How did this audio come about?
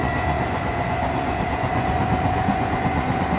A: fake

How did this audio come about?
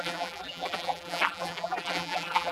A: fake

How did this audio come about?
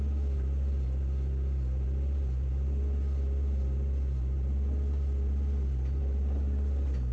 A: real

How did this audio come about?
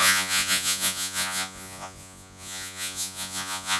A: fake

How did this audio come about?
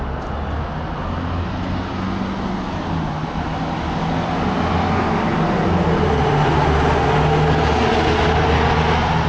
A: real